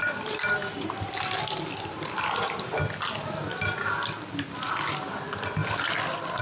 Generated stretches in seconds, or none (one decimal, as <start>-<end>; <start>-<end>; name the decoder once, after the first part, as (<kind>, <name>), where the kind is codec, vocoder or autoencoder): none